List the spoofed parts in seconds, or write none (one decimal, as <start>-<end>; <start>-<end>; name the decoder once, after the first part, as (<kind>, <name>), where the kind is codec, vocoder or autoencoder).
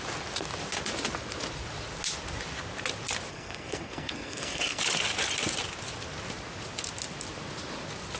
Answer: 3.3-4.8 (codec, SNAC)